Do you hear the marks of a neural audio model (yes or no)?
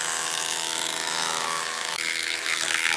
yes